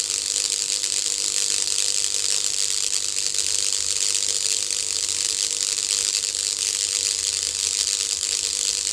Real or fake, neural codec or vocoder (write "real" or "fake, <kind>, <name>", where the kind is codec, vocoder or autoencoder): real